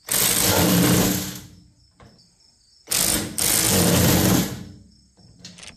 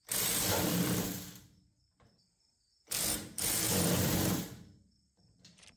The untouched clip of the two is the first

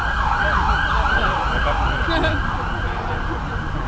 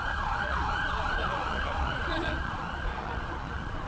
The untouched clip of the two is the first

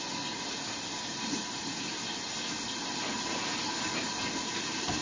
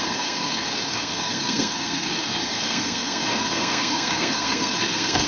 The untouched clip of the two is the first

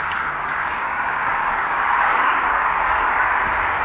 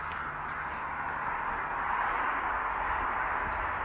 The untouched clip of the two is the second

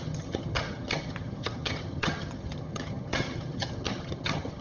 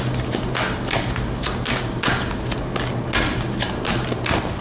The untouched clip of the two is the second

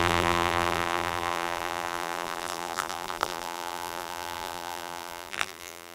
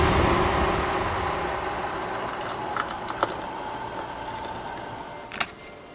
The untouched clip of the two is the second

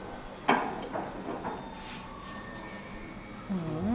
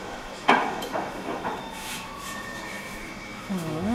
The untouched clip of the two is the first